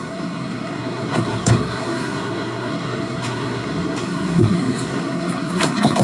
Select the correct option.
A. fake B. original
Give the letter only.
A